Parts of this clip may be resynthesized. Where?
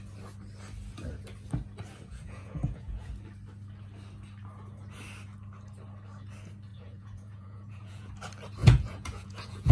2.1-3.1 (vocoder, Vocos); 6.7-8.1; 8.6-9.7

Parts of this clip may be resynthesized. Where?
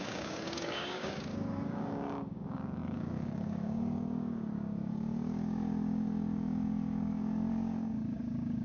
0.0-8.6 (codec, DAC)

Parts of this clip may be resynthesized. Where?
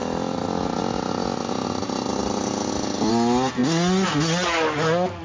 none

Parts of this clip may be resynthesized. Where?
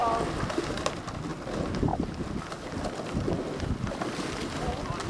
none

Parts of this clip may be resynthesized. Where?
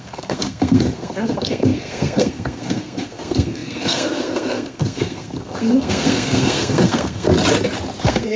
0.0-7.3 (codec, SNAC); 8.0-8.4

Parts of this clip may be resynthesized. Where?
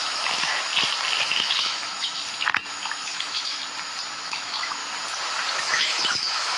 0.0-0.7 (autoencoder, DAC-VAE); 1.2-2.2; 2.7-3.6; 4.1-4.8; 5.5-6.6